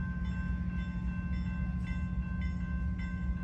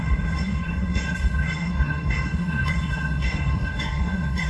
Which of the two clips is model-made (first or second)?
second